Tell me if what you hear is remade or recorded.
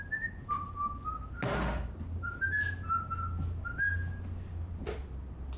recorded